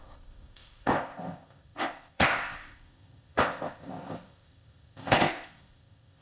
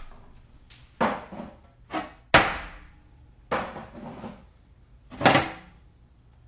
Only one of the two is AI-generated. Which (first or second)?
first